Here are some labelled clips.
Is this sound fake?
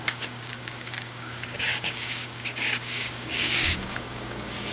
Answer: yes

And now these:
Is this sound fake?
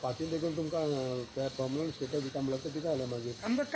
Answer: yes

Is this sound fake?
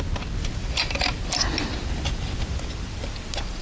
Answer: no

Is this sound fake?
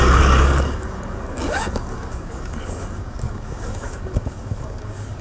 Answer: yes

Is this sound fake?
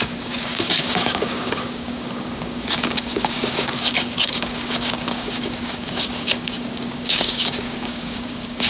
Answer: yes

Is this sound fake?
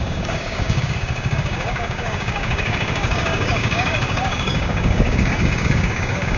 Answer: yes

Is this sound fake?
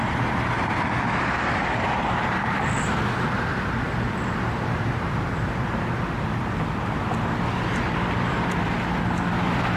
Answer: no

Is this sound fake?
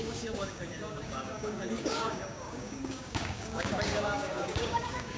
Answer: yes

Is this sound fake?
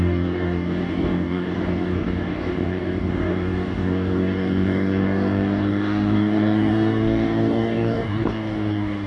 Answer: yes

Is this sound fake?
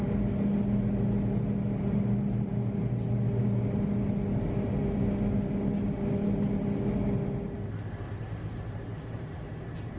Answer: no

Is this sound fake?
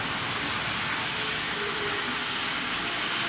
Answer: no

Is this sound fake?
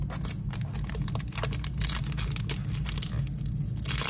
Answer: no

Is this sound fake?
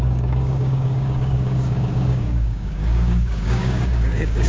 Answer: yes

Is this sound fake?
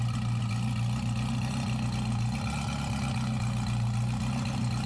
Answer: no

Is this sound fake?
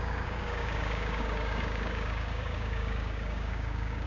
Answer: yes